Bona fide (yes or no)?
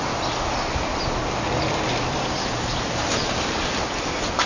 yes